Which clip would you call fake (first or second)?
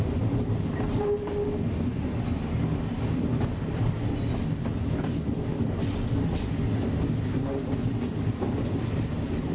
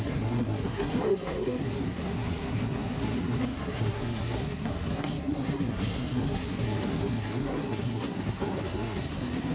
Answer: second